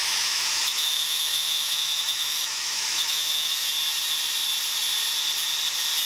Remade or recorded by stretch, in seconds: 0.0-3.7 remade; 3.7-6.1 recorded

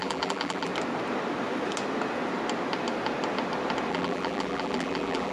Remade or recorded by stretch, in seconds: 0.0-0.7 remade; 0.7-3.9 recorded; 3.9-5.3 remade